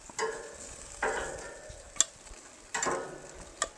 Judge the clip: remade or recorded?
recorded